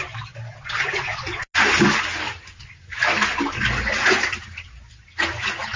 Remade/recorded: recorded